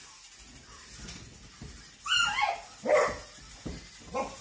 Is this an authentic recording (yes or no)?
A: yes